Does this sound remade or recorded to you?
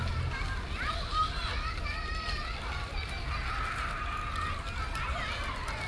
recorded